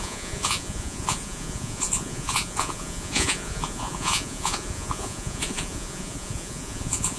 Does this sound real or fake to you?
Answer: fake